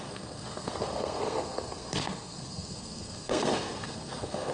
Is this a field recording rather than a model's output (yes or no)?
no